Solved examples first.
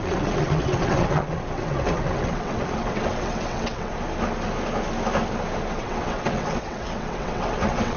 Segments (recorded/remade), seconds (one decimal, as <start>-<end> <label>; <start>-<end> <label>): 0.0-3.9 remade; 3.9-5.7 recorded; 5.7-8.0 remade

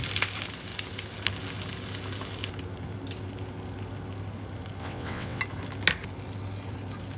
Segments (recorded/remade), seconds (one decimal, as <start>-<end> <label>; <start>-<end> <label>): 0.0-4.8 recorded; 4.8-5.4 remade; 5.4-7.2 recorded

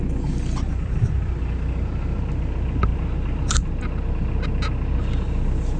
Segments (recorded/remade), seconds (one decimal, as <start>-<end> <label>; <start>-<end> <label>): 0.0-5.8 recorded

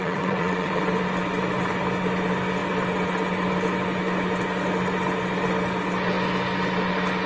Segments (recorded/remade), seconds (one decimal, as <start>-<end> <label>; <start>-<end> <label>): 0.0-0.8 remade; 0.8-7.3 recorded

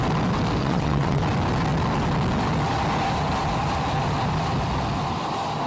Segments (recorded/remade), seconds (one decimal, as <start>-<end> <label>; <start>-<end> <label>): 0.0-0.6 recorded; 0.6-1.2 remade; 1.2-5.7 recorded